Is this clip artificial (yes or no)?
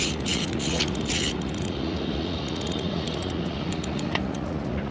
yes